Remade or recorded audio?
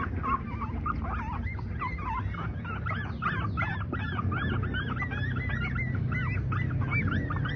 recorded